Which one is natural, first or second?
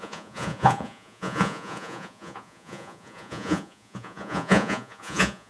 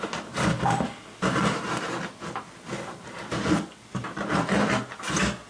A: second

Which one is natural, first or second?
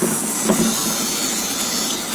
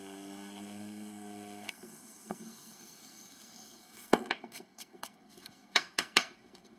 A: first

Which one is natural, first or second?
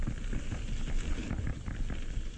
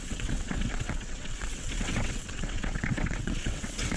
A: first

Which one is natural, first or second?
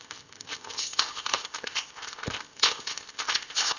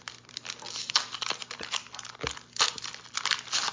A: second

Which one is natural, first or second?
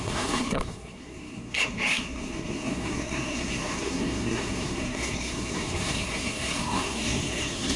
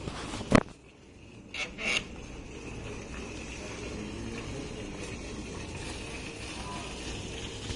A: second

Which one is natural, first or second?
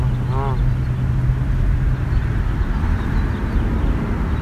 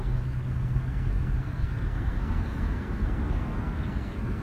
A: first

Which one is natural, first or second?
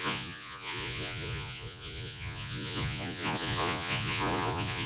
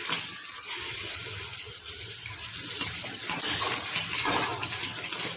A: second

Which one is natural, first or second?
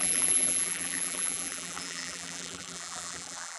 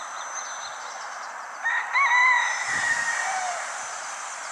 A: second